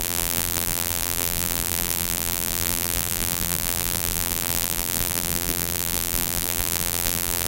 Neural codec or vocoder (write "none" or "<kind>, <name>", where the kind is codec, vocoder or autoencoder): vocoder, BigVGAN v2